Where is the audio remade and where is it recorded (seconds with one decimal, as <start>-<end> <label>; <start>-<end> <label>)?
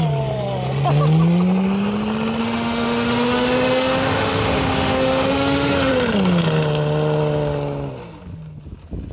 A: 0.0-2.4 recorded; 2.4-5.9 remade; 5.9-9.1 recorded